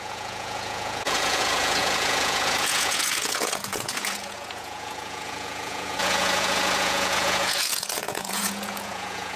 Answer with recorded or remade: remade